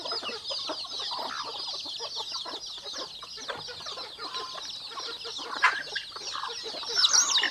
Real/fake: real